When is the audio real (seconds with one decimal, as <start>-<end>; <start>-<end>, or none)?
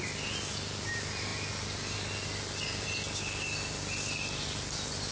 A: 0.0-5.1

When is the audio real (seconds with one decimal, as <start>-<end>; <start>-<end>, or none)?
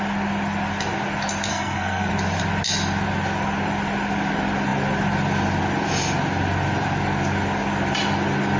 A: 0.0-1.5; 2.1-8.6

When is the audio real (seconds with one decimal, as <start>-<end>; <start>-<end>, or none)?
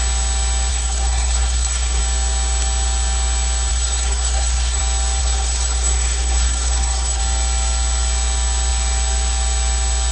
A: 0.0-0.7; 2.0-3.7; 4.8-5.2; 7.2-10.1